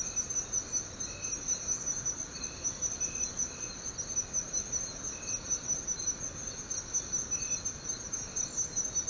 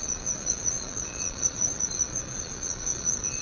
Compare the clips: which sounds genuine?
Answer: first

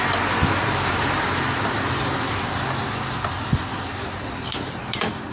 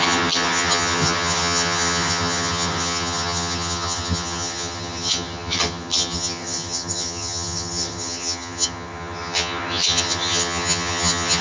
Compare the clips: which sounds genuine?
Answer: first